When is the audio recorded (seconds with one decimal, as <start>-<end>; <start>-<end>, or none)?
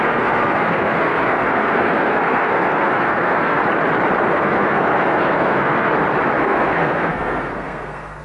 3.6-4.2; 5.9-6.4